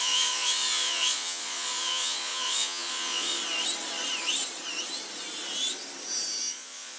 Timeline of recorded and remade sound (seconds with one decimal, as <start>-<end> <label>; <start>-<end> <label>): 0.0-3.4 remade; 3.4-6.4 recorded; 6.4-7.0 remade